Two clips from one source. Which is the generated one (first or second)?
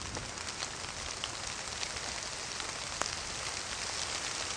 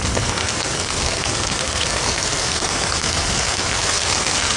second